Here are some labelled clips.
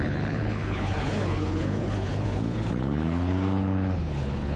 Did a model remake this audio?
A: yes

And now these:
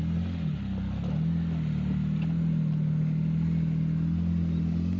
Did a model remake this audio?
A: no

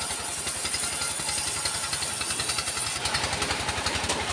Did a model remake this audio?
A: no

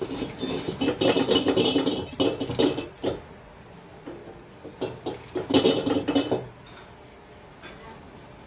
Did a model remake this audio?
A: no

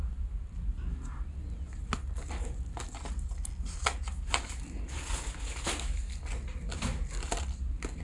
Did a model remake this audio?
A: no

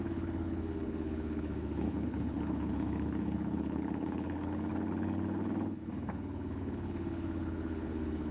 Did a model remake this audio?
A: yes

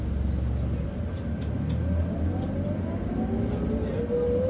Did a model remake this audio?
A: no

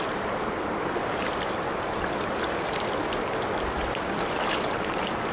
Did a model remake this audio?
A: no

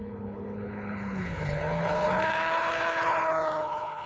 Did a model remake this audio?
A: yes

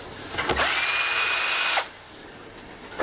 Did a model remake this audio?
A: no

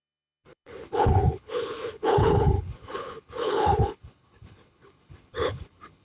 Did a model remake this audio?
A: yes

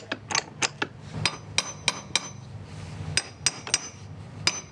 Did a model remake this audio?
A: no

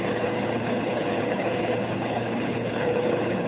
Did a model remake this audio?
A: yes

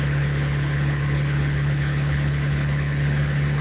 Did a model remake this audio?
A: yes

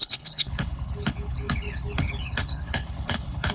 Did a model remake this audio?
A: yes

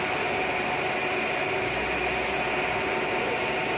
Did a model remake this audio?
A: no